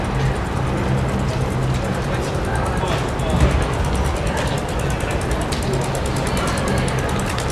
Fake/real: real